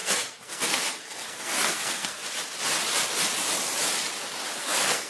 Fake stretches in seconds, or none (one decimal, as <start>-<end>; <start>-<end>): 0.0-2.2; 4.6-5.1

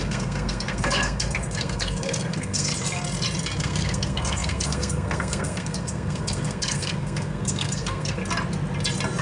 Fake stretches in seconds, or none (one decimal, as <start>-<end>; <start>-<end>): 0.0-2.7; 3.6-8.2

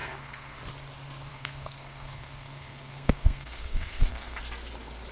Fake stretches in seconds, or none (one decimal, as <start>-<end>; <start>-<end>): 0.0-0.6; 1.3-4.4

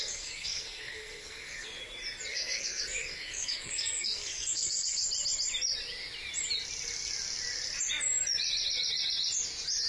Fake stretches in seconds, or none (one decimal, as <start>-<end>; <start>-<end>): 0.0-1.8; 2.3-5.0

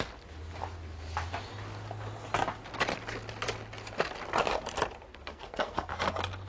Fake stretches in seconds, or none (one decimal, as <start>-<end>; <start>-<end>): 5.1-5.9

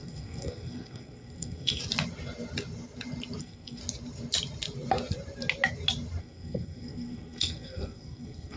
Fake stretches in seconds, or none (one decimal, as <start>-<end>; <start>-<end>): 0.0-1.8; 3.4-3.8; 6.2-8.6

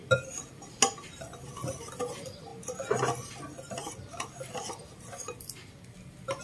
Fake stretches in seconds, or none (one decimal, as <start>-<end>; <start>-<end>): none

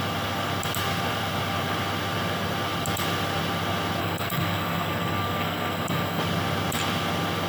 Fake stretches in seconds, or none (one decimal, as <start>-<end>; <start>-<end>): 4.0-6.2